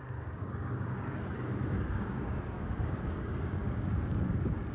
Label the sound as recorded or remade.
remade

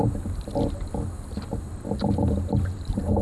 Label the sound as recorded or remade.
remade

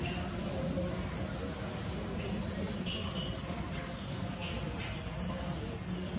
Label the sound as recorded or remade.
recorded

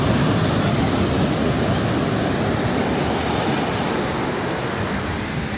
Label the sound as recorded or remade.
recorded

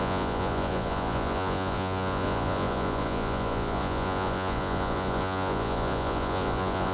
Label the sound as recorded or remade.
remade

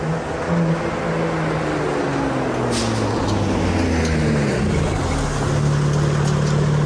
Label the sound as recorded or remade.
recorded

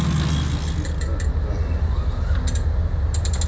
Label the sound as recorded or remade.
recorded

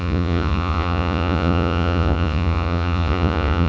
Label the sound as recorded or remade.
remade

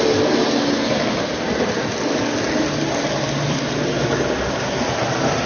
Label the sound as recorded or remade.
recorded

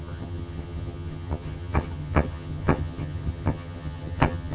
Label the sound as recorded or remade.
remade